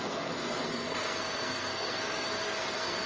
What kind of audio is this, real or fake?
fake